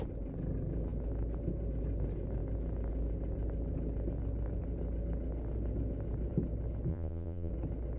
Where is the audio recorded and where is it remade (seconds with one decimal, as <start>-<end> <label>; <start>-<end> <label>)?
0.0-6.9 recorded; 6.9-7.5 remade; 7.5-8.0 recorded